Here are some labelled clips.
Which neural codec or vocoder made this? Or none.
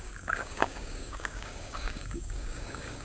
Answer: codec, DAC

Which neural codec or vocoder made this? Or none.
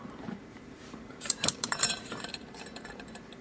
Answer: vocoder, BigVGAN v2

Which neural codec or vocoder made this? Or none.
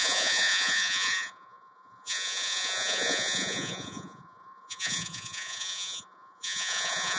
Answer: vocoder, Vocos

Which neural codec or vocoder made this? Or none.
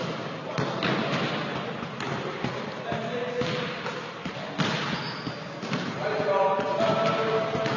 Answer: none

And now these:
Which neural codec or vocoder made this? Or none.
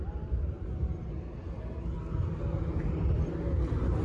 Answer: none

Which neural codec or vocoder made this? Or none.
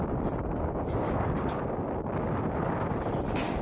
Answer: none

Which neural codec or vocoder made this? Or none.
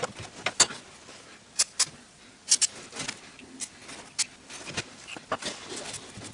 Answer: none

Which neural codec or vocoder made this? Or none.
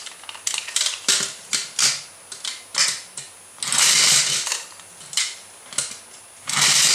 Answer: none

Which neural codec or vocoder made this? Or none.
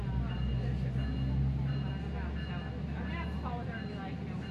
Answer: none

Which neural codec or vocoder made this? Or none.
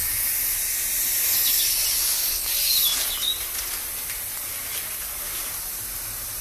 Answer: none